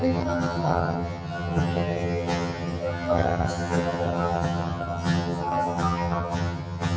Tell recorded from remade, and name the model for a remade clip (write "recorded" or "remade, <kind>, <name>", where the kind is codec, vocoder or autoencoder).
remade, vocoder, HiFi-GAN